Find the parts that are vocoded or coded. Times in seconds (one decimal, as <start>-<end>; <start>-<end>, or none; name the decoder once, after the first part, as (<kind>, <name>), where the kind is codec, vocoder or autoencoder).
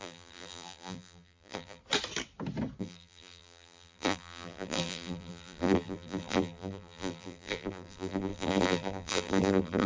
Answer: 0.0-1.8 (vocoder, BigVGAN v2); 2.8-9.9